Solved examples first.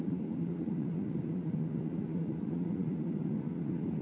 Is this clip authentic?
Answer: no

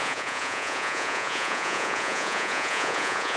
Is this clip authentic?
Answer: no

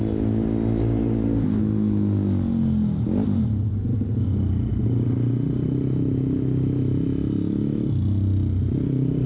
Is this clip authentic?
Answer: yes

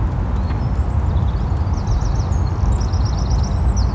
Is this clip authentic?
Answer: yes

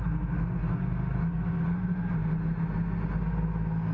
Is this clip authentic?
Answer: yes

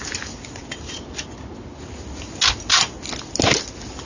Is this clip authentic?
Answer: yes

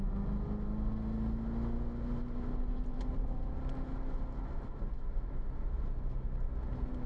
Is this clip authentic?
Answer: yes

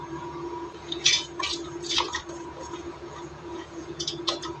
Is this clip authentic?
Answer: no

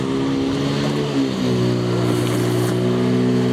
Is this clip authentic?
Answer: yes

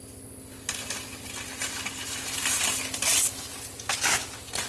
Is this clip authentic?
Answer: yes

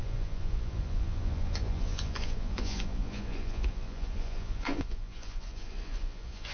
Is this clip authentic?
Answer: no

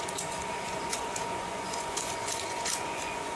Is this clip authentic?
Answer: no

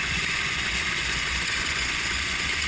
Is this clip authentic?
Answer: no